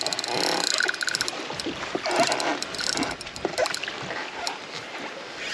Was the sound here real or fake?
real